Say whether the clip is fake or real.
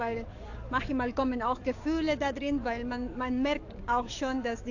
fake